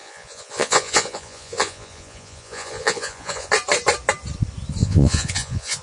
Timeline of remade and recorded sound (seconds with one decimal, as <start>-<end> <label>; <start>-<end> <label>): 0.0-3.5 remade; 3.5-4.8 recorded; 4.8-5.8 remade